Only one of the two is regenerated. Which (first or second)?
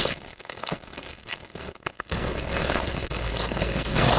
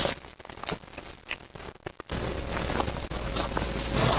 first